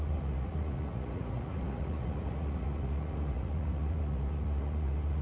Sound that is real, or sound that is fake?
fake